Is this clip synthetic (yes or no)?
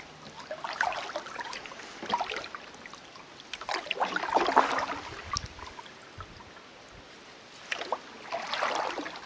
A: no